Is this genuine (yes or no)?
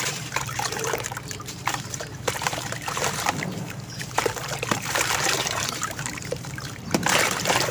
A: no